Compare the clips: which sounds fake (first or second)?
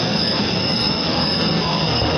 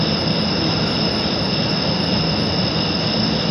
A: first